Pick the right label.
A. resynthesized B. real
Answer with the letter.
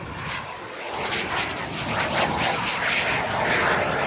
B